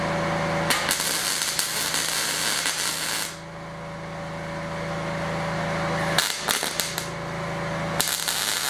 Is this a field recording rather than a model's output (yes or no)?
yes